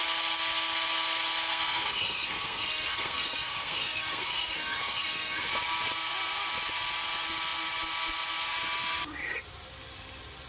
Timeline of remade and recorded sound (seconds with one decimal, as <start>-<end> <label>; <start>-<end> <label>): 0.0-1.5 recorded; 1.5-5.5 remade; 5.5-10.5 recorded